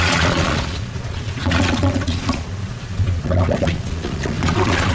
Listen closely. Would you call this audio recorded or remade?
remade